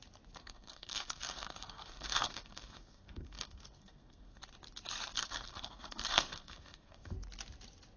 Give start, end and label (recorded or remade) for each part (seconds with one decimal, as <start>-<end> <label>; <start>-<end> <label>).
0.0-0.4 recorded; 0.4-4.4 remade; 4.4-5.1 recorded; 5.1-7.1 remade; 7.1-8.0 recorded